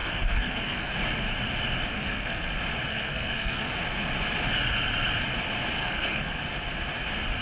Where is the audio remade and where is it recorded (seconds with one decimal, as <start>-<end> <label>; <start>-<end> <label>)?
0.0-0.9 remade; 0.9-1.9 recorded; 1.9-2.5 remade; 2.5-2.9 recorded; 2.9-3.7 remade; 3.7-5.8 recorded; 5.8-6.4 remade; 6.4-7.4 recorded